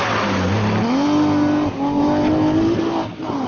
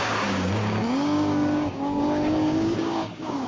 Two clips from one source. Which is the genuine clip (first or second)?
first